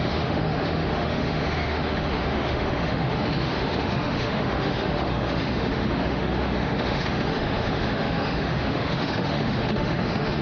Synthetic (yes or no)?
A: yes